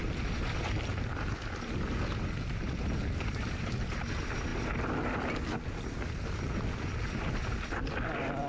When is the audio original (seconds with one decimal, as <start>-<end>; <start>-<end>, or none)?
0.6-2.1; 3.7-8.5